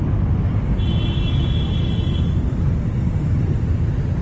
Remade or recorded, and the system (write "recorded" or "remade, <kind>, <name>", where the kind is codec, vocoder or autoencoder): recorded